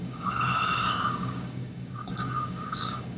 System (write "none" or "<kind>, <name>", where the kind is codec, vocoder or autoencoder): codec, DAC